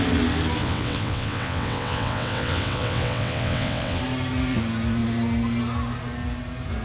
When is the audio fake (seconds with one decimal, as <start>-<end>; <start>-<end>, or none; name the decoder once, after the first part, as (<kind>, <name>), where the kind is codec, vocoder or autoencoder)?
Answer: 0.6-4.0 (vocoder, WaveNeXt)